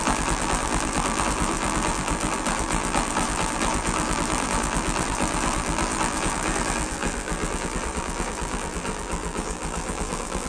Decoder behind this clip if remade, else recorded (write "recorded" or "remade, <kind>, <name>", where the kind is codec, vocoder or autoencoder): remade, vocoder, BigVGAN v2